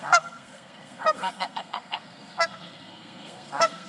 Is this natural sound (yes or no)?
no